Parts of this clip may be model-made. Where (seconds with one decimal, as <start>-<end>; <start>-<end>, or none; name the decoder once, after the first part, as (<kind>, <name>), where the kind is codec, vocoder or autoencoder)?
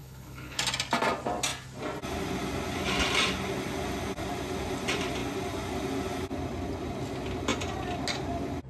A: 0.0-0.6 (codec, HILCodec)